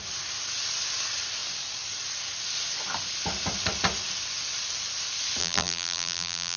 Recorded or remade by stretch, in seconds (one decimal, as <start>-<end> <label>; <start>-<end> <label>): 0.0-5.4 recorded; 5.4-6.6 remade